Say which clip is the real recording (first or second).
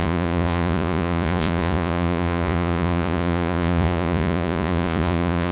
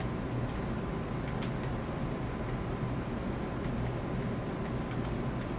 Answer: second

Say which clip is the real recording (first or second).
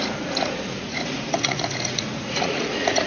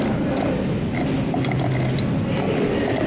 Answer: second